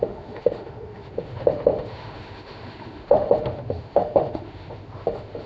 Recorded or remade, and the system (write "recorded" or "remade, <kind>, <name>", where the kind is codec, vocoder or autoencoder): remade, autoencoder, DAC-VAE